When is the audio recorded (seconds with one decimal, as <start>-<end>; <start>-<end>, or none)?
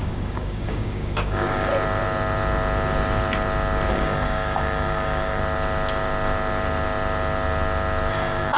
1.7-3.9; 5.4-8.1